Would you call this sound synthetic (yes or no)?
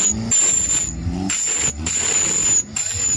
no